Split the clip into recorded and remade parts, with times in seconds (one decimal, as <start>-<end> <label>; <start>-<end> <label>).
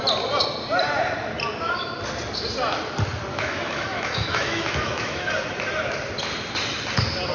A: 0.0-3.3 recorded; 3.3-5.3 remade; 5.3-7.3 recorded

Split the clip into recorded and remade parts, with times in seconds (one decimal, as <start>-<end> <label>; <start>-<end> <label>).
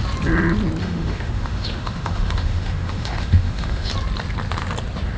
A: 0.0-0.8 recorded; 0.8-3.9 remade; 3.9-5.2 recorded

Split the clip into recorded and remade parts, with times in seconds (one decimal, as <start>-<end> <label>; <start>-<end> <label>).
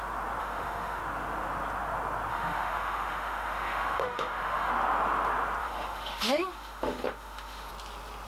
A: 0.0-0.4 recorded; 0.4-1.0 remade; 1.0-2.3 recorded; 2.3-4.7 remade; 4.7-5.6 recorded; 5.6-7.7 remade; 7.7-8.3 recorded